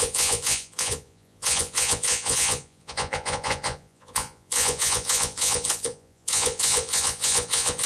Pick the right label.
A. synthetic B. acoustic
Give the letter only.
A